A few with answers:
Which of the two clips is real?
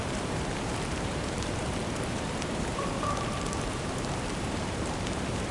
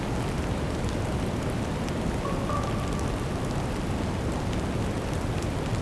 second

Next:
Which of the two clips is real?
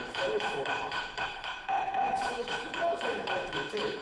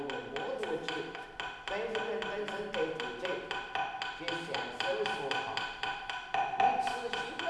second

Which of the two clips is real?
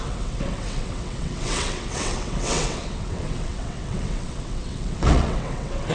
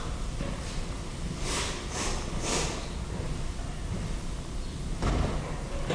second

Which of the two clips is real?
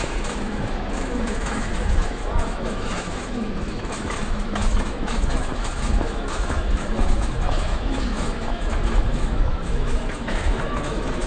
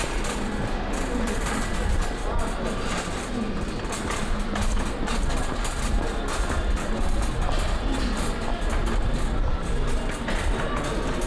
second